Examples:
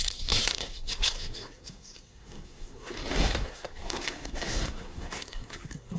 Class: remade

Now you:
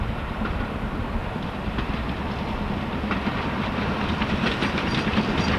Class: recorded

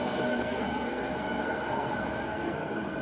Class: remade